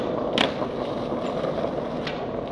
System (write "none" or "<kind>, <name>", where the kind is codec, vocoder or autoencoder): none